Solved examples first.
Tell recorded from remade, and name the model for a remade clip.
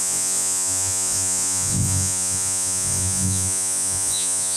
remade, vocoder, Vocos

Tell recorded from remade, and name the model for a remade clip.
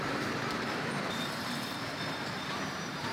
remade, vocoder, BigVGAN v2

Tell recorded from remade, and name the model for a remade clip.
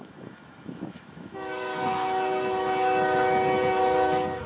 remade, autoencoder, DAC-VAE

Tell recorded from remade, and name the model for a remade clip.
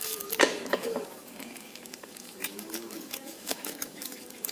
remade, codec, DAC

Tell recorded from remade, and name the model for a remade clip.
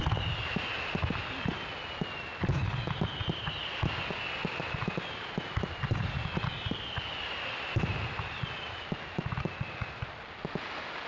recorded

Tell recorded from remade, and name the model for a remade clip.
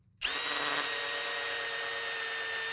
recorded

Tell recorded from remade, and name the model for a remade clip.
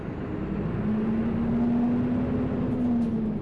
recorded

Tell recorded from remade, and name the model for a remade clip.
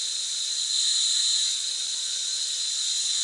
recorded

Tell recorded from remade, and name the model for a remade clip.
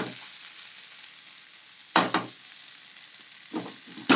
recorded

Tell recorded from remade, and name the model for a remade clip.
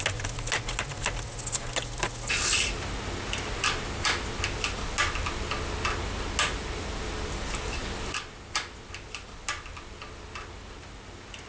recorded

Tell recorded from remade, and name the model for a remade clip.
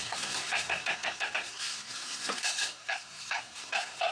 remade, codec, SNAC